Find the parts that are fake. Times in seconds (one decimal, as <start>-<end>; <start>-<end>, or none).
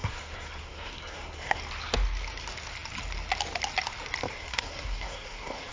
0.0-1.6; 4.3-5.7